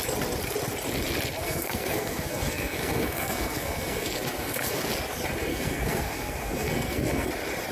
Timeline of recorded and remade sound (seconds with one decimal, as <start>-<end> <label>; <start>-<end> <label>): 0.0-1.4 recorded; 1.4-4.8 remade; 4.8-5.5 recorded; 5.5-7.3 remade; 7.3-7.7 recorded